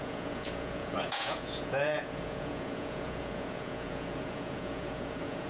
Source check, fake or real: fake